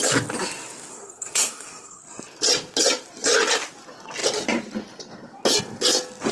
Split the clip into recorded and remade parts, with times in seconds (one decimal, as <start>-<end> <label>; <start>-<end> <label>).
0.0-0.9 recorded; 0.9-2.0 remade; 2.0-6.3 recorded